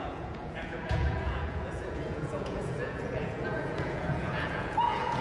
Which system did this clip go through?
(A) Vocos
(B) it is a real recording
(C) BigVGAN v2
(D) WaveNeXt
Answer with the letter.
A